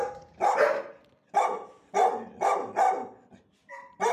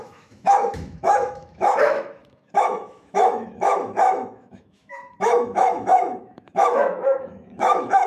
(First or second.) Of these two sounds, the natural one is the first